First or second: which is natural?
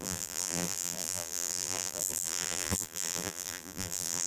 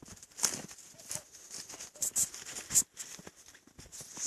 second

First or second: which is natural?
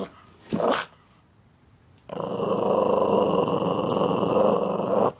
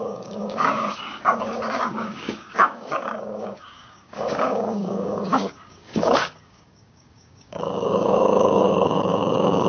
first